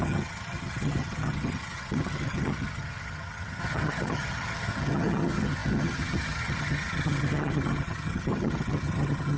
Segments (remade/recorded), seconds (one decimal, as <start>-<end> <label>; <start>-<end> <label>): 0.0-9.4 remade